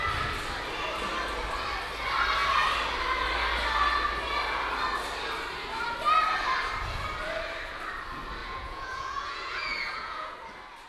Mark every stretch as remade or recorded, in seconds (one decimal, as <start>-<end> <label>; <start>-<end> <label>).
0.0-8.4 recorded; 8.4-10.3 remade; 10.3-10.9 recorded